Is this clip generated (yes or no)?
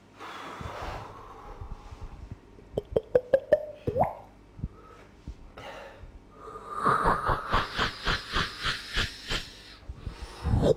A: no